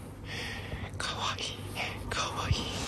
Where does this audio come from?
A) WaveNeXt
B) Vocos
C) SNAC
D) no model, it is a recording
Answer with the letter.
D